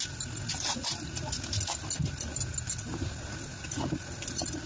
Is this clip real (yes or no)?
yes